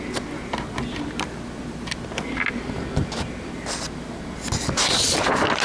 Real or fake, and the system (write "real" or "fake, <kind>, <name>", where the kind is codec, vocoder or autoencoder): real